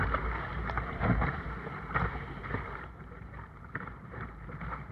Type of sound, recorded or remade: remade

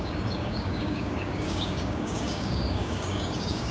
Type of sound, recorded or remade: remade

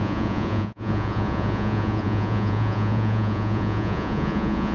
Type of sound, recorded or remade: remade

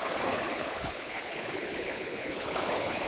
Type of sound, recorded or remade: remade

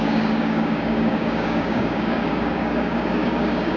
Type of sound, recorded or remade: remade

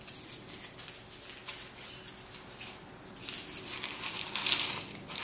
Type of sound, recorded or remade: recorded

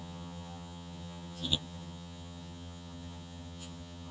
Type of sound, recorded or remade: remade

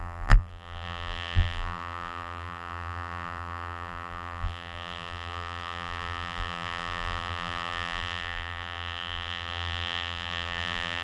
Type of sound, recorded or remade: remade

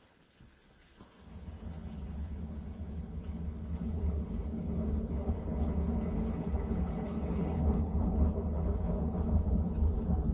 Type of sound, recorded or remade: remade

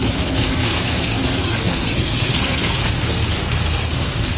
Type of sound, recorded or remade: remade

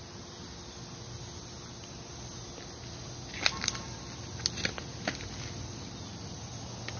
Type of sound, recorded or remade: recorded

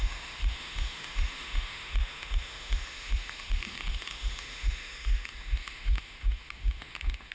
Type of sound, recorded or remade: remade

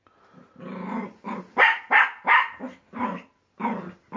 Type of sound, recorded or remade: recorded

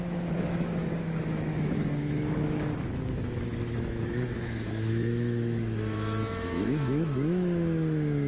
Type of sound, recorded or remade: remade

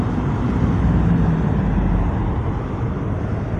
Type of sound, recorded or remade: recorded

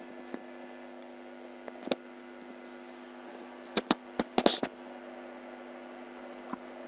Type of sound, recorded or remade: recorded